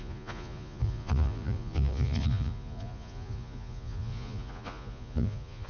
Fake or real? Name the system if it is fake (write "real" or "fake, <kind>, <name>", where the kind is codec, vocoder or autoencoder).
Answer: fake, vocoder, Vocos